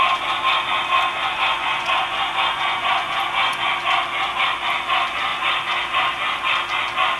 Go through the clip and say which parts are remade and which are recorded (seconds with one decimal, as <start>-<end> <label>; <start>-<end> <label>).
0.0-1.2 recorded; 1.2-3.7 remade; 3.7-7.2 recorded